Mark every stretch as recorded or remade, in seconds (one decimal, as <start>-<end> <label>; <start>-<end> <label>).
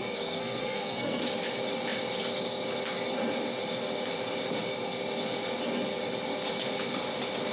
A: 0.0-1.2 remade; 1.2-7.5 recorded